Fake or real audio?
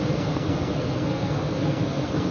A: fake